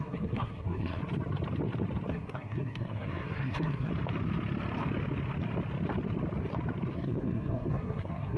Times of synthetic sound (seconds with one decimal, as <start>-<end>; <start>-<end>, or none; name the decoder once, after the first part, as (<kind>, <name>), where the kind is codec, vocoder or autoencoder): 0.0-1.0 (codec, SNAC); 2.1-3.9; 6.9-8.4